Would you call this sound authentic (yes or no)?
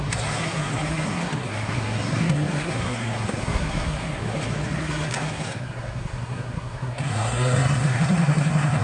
no